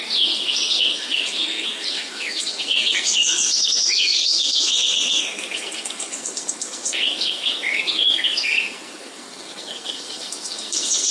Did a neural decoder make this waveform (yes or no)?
yes